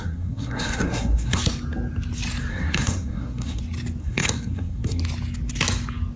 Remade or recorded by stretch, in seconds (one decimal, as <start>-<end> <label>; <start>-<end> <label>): 0.0-1.4 remade; 1.4-2.5 recorded; 2.5-3.6 remade; 3.6-4.0 recorded; 4.0-5.0 remade; 5.0-6.2 recorded